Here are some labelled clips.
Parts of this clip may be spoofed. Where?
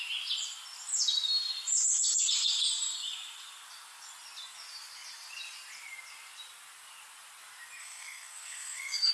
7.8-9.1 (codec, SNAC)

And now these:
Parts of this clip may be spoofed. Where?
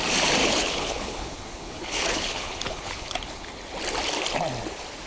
0.4-3.5 (codec, HILCodec)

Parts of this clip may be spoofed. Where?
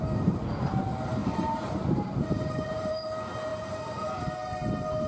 1.2-2.9 (vocoder, BigVGAN v2); 3.5-4.2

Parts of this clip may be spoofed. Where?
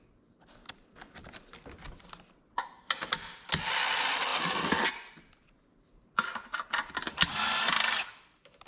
none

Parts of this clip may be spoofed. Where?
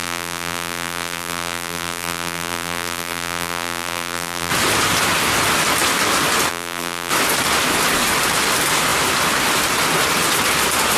0.0-4.5 (vocoder, BigVGAN v2); 6.5-7.1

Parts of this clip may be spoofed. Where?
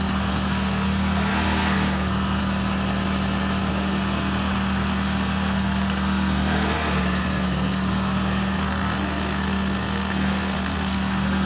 0.0-2.4 (codec, SNAC); 3.7-11.5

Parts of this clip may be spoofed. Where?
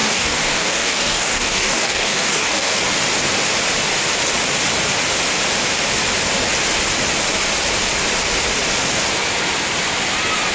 0.0-2.8 (codec, DAC)